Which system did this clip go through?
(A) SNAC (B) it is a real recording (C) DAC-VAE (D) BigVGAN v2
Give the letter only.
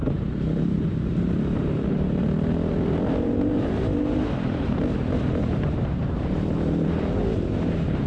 D